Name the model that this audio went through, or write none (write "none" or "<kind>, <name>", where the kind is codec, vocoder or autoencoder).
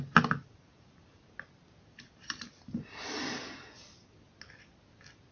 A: none